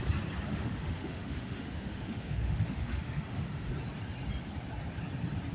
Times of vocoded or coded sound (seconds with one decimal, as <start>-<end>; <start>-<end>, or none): 0.5-3.7